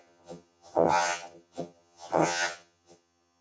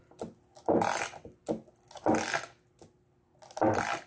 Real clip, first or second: second